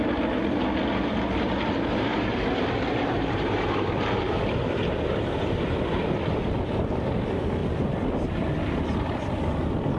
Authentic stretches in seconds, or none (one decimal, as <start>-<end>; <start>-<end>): 0.0-2.1; 4.2-10.0